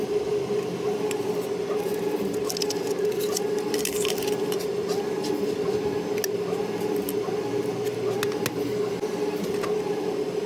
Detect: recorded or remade recorded